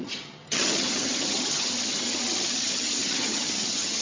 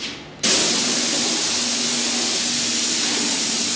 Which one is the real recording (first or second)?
second